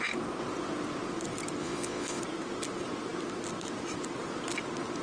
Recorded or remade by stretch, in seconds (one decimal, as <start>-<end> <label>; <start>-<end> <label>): 0.0-1.6 recorded; 1.6-2.2 remade; 2.2-5.0 recorded